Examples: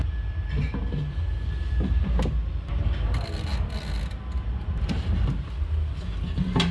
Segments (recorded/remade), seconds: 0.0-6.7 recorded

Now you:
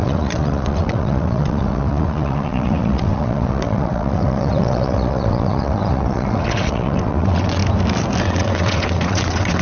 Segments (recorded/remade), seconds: 0.0-7.6 remade; 7.6-8.2 recorded; 8.2-9.6 remade

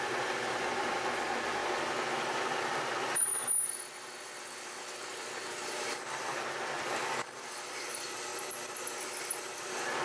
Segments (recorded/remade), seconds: 0.0-1.6 remade; 1.6-2.1 recorded; 2.1-3.3 remade; 3.3-5.9 recorded; 5.9-8.3 remade; 8.3-9.1 recorded; 9.1-10.0 remade

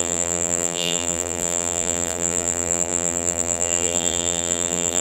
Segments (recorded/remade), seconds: 0.0-5.0 remade

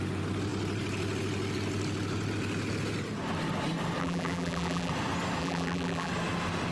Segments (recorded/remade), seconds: 0.0-4.0 recorded; 4.0-4.9 remade; 4.9-5.4 recorded; 5.4-6.1 remade; 6.1-6.7 recorded